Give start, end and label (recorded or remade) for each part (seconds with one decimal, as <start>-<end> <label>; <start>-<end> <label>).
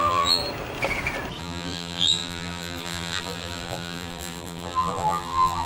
0.0-0.4 remade; 0.4-1.4 recorded; 1.4-5.7 remade